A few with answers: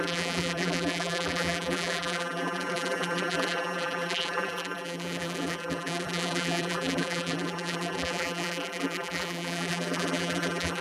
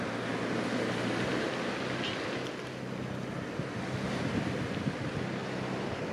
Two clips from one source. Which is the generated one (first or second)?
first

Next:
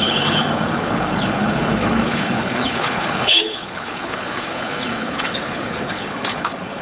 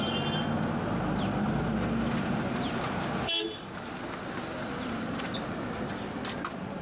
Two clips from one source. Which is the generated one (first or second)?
first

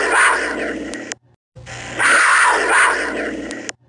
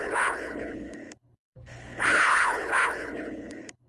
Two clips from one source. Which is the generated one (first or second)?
second